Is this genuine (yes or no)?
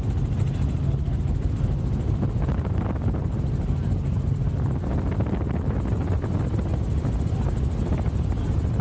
yes